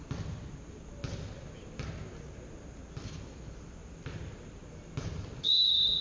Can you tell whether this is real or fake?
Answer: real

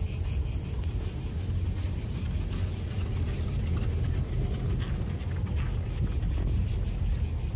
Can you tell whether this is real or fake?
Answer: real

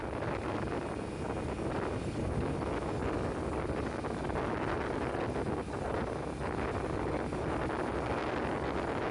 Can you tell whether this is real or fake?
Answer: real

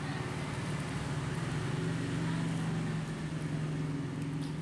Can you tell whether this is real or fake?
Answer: real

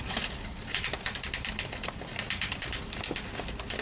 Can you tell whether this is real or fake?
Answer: real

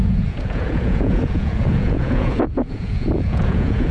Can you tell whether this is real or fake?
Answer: fake